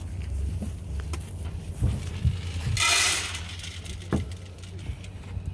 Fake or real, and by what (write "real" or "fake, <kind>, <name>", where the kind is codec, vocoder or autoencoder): real